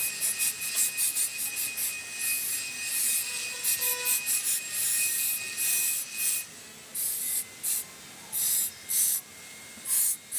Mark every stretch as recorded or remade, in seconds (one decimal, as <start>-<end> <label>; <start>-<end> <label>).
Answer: 0.0-10.4 recorded